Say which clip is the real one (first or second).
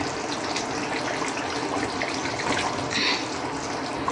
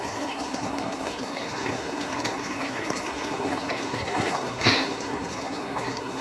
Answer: first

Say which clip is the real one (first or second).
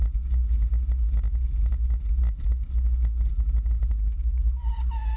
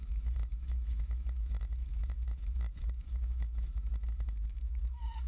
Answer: first